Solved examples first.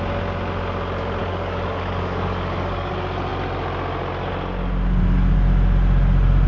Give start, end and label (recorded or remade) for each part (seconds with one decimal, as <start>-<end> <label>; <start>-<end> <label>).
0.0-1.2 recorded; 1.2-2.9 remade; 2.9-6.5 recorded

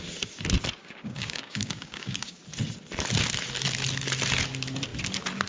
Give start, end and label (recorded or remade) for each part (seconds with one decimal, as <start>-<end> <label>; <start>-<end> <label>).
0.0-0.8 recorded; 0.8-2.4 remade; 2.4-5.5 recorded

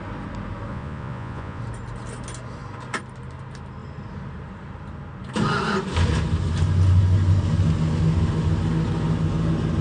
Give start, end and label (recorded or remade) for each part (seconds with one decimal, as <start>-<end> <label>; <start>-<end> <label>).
0.0-0.7 recorded; 0.7-1.6 remade; 1.6-9.8 recorded

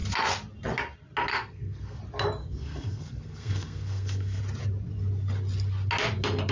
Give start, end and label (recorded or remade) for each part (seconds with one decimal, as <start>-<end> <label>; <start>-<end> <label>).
0.0-1.3 recorded; 1.3-2.0 remade; 2.0-2.4 recorded; 2.4-4.4 remade; 4.4-6.5 recorded

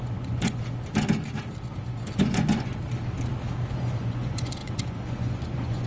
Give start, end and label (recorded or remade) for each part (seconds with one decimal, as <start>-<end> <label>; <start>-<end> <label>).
0.0-0.6 remade; 0.6-2.0 recorded; 2.0-2.7 remade; 2.7-3.7 recorded; 3.7-5.9 remade

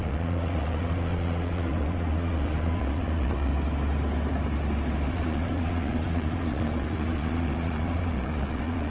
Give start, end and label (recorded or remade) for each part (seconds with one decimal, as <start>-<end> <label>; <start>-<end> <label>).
0.0-3.5 remade; 3.5-5.1 recorded; 5.1-8.9 remade